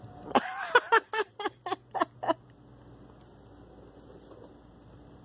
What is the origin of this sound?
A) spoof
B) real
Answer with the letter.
B